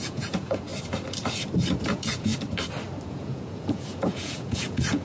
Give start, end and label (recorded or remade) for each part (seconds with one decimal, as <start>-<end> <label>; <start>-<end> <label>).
0.0-0.7 remade; 0.7-1.8 recorded; 1.8-2.3 remade; 2.3-3.1 recorded; 3.1-5.0 remade